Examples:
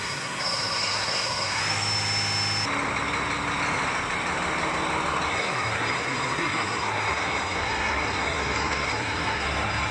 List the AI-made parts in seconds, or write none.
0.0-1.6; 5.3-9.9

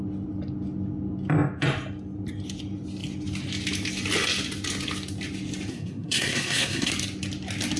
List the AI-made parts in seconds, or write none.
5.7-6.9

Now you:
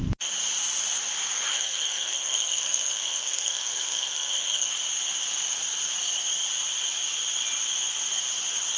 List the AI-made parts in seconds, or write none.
1.5-4.7

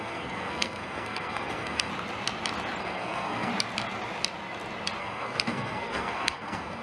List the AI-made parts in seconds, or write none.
0.0-1.9; 2.8-3.5; 5.0-6.8

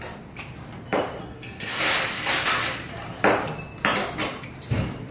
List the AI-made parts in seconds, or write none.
1.2-1.8

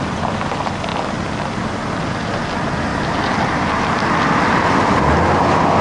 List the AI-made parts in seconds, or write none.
none